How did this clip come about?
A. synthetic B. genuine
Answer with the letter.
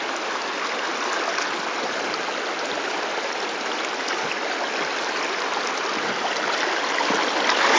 B